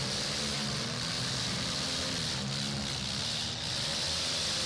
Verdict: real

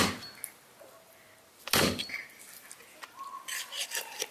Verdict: real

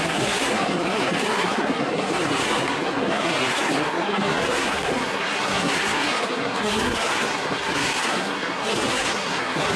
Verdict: fake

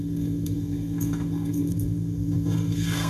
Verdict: fake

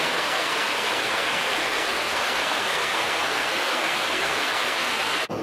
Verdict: fake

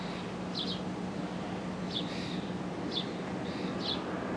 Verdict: real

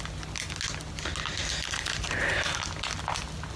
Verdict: real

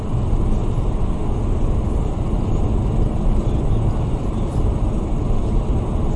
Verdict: real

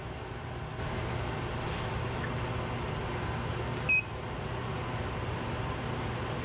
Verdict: real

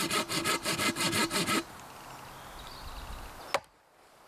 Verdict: real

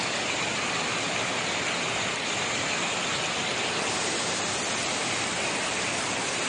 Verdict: real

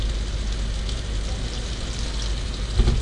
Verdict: real